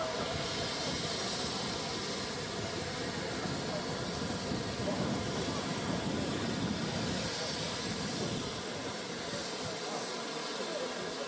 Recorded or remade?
recorded